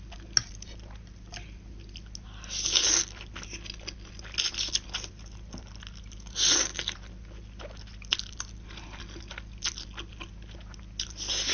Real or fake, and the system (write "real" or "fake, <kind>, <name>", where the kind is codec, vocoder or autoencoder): real